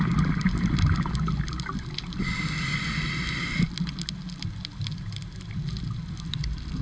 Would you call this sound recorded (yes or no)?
yes